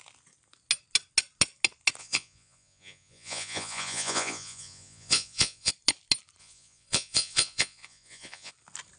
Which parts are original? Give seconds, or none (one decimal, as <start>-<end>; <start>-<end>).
0.0-2.0; 5.7-6.4; 8.5-9.0